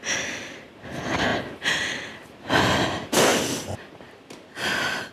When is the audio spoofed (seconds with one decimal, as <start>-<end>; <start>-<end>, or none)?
3.3-4.0

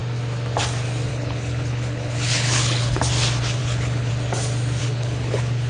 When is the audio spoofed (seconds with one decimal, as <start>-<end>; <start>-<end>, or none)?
1.1-3.0; 3.6-4.1; 4.8-5.7

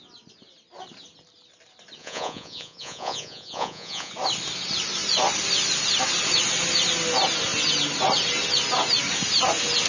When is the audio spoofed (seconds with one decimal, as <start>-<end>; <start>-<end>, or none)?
2.0-4.1

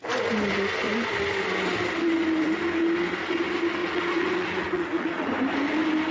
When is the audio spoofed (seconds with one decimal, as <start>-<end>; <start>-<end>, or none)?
3.8-5.3